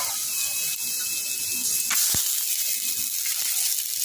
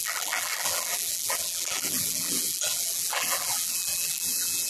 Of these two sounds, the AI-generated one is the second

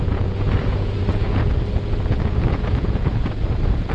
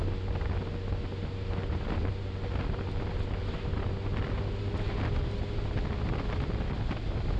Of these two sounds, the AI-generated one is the first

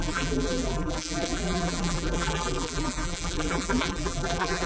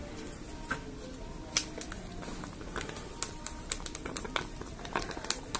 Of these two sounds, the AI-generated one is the first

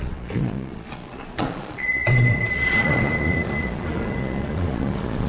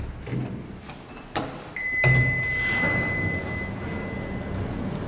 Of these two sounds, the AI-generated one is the first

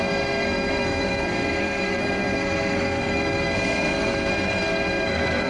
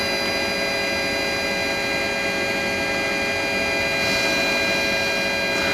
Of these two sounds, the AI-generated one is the first